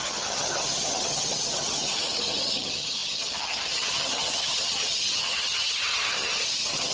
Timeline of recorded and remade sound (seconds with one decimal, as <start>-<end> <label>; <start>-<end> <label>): 0.0-6.9 remade